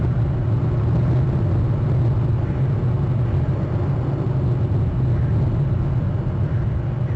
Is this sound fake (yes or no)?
no